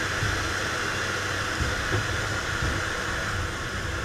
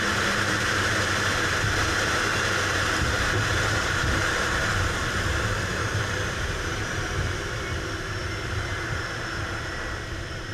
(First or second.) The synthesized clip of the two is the second